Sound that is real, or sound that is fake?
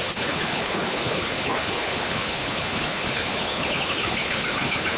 fake